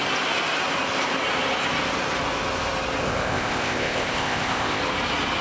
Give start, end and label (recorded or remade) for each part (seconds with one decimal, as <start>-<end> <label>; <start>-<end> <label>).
0.0-3.0 recorded; 3.0-4.8 remade; 4.8-5.4 recorded